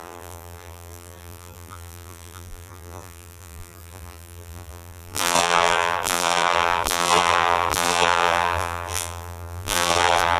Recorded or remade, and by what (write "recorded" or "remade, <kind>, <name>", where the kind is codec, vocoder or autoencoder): remade, vocoder, BigVGAN v2